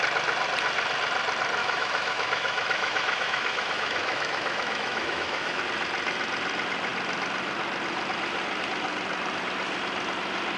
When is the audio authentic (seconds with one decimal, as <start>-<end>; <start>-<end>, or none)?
0.0-1.6; 5.6-10.6